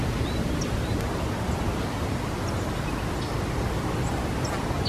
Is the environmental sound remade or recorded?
recorded